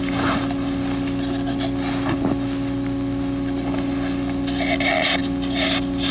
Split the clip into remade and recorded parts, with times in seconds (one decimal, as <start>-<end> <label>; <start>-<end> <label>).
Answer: 0.0-6.1 recorded